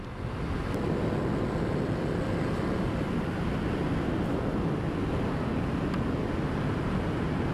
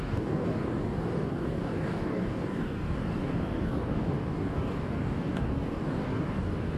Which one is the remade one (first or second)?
second